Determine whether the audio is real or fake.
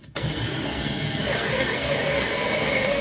fake